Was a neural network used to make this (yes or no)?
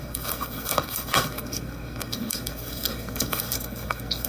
yes